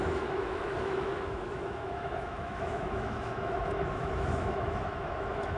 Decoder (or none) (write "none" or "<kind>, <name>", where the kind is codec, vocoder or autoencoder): autoencoder, DAC-VAE